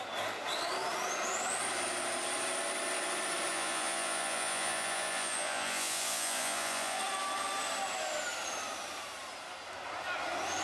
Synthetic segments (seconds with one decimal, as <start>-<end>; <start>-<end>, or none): 3.5-7.0

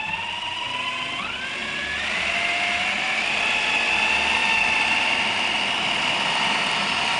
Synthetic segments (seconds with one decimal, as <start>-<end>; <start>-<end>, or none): none